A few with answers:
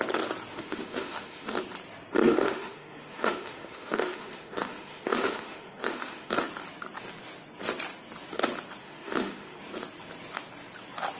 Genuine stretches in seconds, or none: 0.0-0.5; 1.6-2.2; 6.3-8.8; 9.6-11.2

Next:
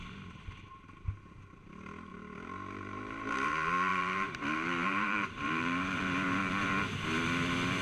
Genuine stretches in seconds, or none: 0.0-2.1; 3.5-3.9; 6.7-7.8

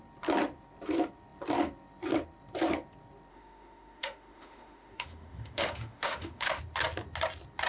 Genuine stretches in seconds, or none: 0.0-3.3; 6.6-7.7

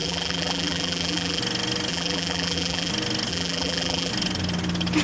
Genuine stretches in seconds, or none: 1.4-1.9; 2.9-3.3; 4.1-5.0

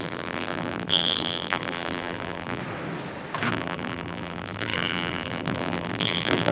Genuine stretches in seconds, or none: 2.6-3.5

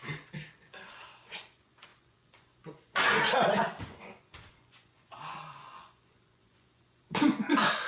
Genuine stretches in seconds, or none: 0.0-0.5

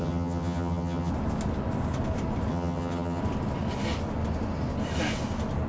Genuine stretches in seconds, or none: 1.1-2.5; 3.2-5.7